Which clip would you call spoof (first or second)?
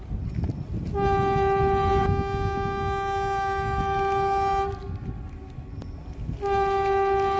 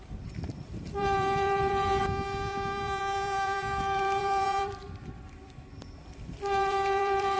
second